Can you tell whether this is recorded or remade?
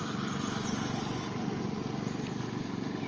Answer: recorded